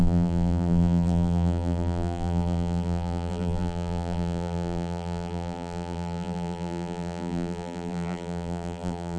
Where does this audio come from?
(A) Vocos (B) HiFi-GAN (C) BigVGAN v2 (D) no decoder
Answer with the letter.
C